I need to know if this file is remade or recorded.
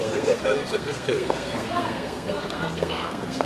remade